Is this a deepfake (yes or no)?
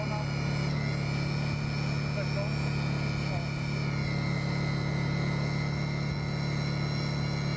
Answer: no